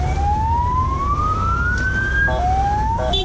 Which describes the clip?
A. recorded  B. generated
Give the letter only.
A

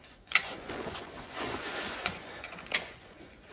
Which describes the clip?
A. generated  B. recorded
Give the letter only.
A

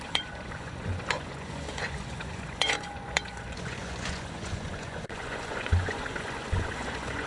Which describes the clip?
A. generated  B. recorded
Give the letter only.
A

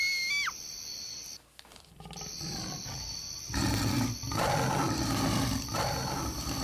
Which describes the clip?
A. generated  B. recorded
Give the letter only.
B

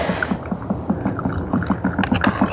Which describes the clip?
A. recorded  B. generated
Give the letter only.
A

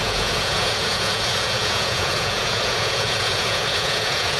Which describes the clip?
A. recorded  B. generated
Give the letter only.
B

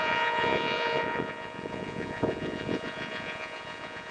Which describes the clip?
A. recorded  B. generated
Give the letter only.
B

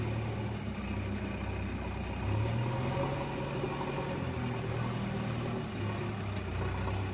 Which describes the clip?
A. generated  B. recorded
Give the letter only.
B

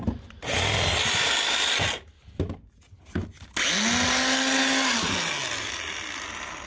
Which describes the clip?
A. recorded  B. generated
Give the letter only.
A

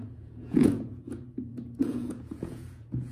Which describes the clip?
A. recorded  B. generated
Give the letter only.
B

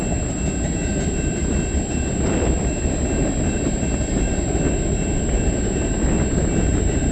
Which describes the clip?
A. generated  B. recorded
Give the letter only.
B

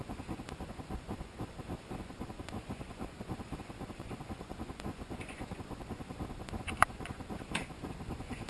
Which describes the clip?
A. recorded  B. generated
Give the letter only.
B